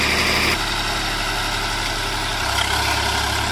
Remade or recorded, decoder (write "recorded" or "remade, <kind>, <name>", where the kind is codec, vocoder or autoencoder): recorded